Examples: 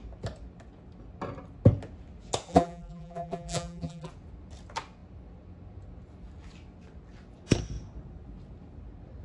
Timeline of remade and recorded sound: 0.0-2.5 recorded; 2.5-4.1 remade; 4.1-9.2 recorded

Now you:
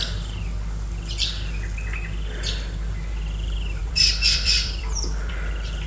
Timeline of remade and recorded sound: 0.0-3.8 recorded; 3.8-5.3 remade; 5.3-5.9 recorded

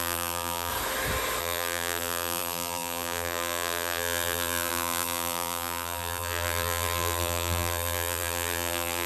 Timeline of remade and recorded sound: 0.0-0.7 remade; 0.7-1.4 recorded; 1.4-9.1 remade

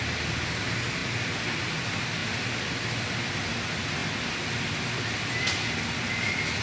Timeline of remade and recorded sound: 0.0-6.6 recorded

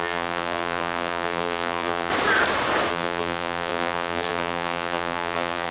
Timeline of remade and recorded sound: 0.0-2.1 remade; 2.1-2.9 recorded; 2.9-5.7 remade

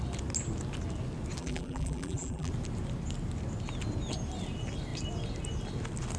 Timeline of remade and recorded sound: 0.0-1.4 recorded; 1.4-2.5 remade; 2.5-6.2 recorded

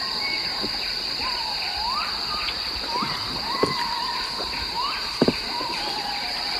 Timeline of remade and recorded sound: 0.0-6.6 recorded

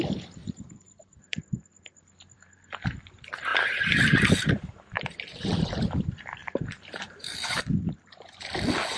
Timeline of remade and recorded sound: 0.0-0.4 recorded; 0.4-1.4 remade; 1.4-3.5 recorded; 3.5-5.8 remade; 5.8-6.4 recorded; 6.4-7.6 remade; 7.6-9.0 recorded